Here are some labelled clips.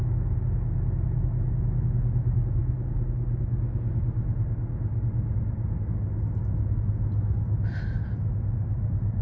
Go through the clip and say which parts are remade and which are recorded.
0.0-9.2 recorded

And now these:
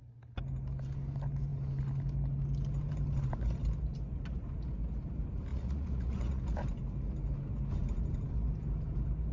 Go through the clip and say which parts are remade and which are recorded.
0.0-5.5 recorded; 5.5-6.4 remade; 6.4-9.3 recorded

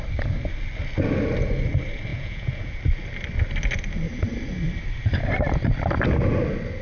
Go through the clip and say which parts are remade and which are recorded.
0.0-2.1 recorded; 2.1-2.8 remade; 2.8-6.8 recorded

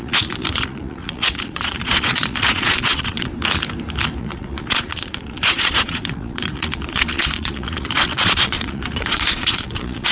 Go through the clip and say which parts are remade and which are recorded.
0.0-3.3 remade; 3.3-4.2 recorded; 4.2-10.1 remade